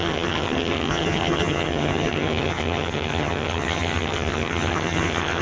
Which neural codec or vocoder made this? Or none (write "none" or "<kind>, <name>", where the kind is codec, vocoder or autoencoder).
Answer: vocoder, HiFi-GAN